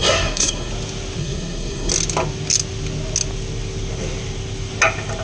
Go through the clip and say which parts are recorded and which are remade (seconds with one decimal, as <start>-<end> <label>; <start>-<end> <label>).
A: 0.0-0.7 remade; 0.7-1.2 recorded; 1.2-1.9 remade; 1.9-5.2 recorded